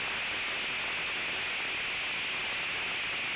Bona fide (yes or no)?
yes